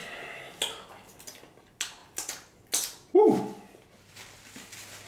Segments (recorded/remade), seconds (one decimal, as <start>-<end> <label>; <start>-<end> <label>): 0.0-5.1 recorded